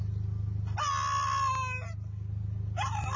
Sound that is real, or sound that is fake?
real